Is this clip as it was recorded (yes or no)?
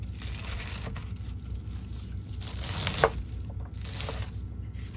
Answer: yes